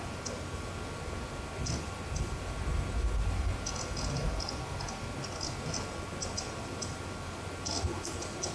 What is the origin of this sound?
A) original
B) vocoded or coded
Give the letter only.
A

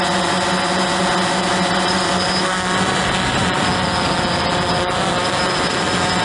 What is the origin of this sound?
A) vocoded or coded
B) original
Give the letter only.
B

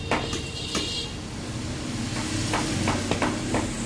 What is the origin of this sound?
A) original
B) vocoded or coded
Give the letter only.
A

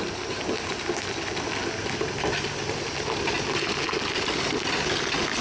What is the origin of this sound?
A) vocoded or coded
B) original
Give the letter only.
B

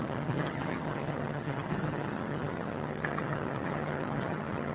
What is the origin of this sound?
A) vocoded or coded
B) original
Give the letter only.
A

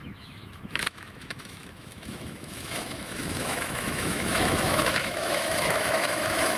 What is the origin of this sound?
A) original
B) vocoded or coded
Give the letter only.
B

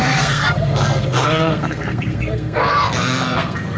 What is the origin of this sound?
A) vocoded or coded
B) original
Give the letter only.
A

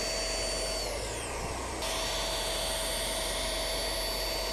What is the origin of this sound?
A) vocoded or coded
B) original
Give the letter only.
B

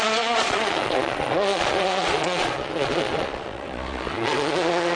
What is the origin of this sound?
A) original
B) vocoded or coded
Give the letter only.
B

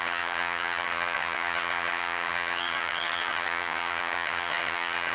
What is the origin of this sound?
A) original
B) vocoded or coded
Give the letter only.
B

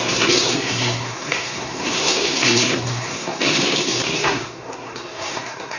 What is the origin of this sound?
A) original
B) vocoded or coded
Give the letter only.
B